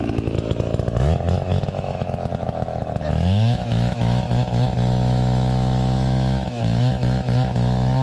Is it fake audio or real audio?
fake